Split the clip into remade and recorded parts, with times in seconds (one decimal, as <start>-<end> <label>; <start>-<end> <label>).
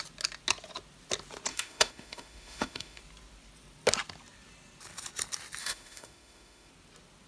0.0-1.5 recorded; 1.5-3.0 remade; 3.0-5.6 recorded; 5.6-6.7 remade; 6.7-7.3 recorded